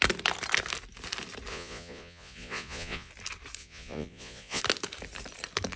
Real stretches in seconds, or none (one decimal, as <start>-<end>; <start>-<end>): 0.0-1.5; 3.1-3.6; 4.6-5.8